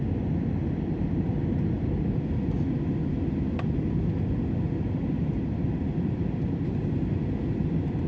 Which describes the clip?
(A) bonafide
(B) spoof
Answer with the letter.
A